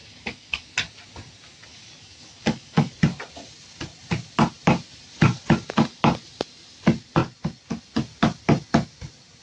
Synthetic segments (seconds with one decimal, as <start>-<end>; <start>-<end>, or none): 0.0-0.7; 1.7-3.0